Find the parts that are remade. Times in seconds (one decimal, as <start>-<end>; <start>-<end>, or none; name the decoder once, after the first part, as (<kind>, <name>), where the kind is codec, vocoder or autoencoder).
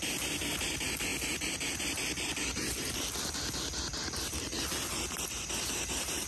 none